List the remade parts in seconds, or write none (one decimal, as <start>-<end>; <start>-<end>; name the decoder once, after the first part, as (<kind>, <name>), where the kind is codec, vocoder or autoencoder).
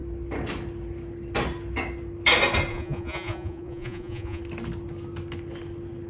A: 2.7-4.4 (vocoder, Vocos)